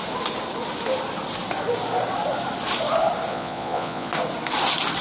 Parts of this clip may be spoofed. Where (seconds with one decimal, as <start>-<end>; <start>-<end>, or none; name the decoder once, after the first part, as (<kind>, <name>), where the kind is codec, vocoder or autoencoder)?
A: 3.3-4.1 (vocoder, Vocos)